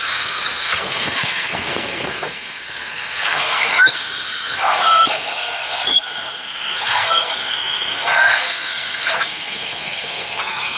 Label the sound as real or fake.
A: fake